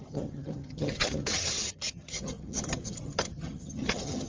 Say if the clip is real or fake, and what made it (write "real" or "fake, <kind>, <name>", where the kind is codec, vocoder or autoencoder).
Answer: fake, vocoder, HiFi-GAN